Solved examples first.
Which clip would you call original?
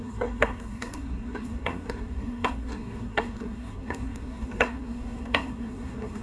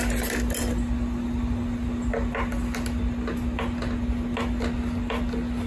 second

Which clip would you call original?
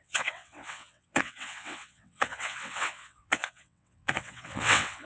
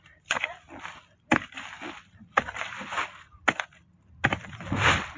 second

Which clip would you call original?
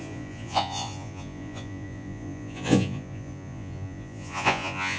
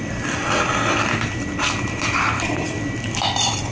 second